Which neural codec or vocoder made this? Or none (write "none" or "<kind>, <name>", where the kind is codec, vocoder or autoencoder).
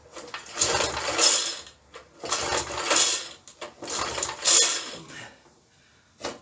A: none